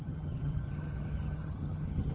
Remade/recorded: remade